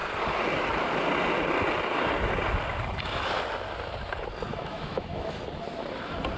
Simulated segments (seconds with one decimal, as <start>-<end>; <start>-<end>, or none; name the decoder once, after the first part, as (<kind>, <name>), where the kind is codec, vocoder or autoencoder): 4.5-5.4 (autoencoder, DAC-VAE)